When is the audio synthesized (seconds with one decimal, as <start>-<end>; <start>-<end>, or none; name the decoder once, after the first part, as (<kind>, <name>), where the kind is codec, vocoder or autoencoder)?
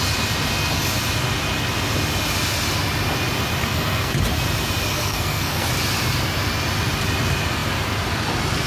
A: 3.6-4.1 (codec, SNAC); 4.9-5.7